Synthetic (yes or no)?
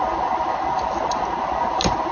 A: no